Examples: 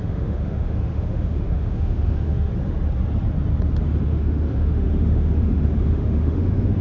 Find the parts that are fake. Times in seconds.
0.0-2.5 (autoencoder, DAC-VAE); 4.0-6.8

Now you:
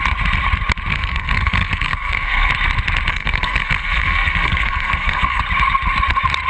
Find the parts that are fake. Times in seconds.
0.9-2.5 (codec, SNAC); 3.1-5.4

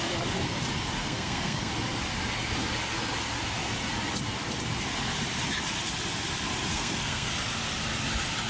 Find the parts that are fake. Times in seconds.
1.0-1.7 (codec, SNAC); 6.7-7.3

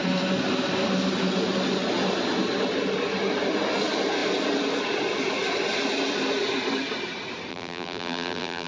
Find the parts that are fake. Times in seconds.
7.5-8.7 (vocoder, BigVGAN v2)

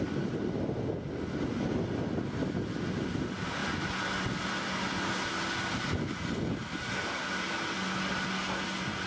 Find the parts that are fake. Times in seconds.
none

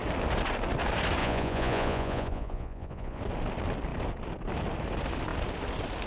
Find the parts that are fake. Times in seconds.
1.2-3.2 (vocoder, Vocos)

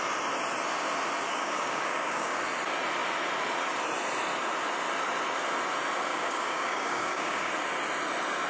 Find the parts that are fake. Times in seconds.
1.3-2.4 (codec, DAC); 6.1-7.5

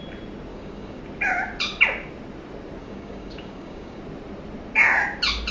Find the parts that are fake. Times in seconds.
0.5-1.0 (codec, DAC); 2.8-4.0